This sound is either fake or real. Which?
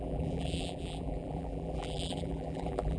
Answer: fake